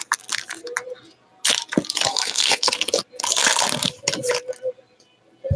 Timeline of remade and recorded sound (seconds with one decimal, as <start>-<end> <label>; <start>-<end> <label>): 0.0-2.1 recorded; 2.1-2.7 remade; 2.7-5.6 recorded